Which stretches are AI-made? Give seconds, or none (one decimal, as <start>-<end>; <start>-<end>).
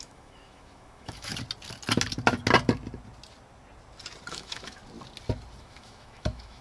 0.0-1.3; 4.3-4.8; 5.6-6.6